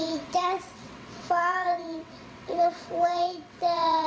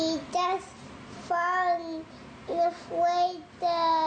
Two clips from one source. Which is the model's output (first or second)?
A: first